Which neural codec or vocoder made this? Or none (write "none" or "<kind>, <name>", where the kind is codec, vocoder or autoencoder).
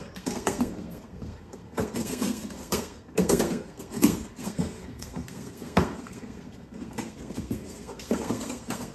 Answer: codec, SNAC